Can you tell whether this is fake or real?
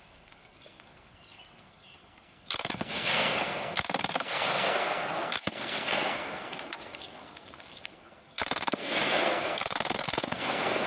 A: fake